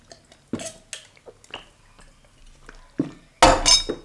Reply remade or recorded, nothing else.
recorded